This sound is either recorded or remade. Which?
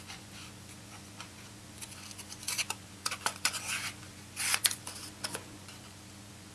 remade